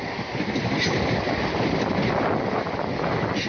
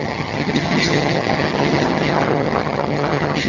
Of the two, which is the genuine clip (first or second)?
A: first